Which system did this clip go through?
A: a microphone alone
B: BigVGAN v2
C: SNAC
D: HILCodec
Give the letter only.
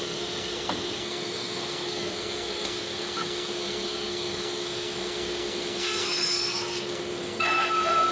C